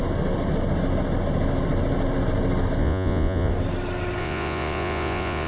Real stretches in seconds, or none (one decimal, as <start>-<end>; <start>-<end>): 0.0-2.8; 3.5-4.2